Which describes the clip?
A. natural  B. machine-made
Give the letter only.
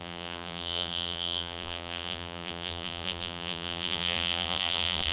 B